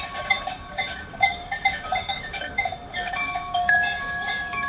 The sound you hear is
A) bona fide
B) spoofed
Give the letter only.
B